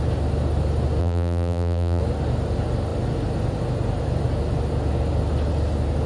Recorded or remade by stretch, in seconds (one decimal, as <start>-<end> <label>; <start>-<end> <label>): 0.0-1.0 recorded; 1.0-2.0 remade; 2.0-6.1 recorded